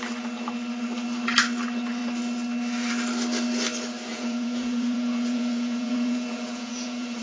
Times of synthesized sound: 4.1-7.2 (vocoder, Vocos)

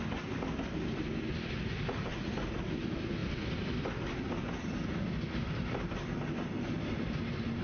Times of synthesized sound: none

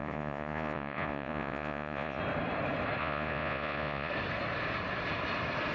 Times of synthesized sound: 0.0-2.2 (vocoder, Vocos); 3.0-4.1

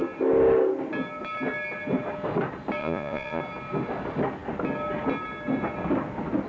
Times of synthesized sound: 2.8-3.4 (vocoder, Vocos)